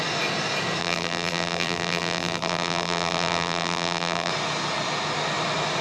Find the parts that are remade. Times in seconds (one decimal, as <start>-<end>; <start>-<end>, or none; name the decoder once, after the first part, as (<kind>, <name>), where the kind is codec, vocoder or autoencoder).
0.8-4.3 (vocoder, BigVGAN v2)